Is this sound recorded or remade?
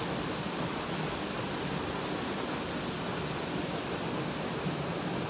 recorded